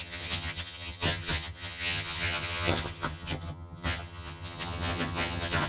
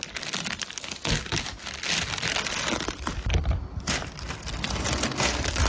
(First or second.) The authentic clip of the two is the second